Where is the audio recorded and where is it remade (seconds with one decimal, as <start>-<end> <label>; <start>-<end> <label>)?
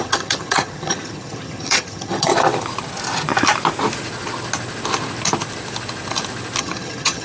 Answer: 0.0-2.3 remade; 2.3-6.6 recorded; 6.6-7.2 remade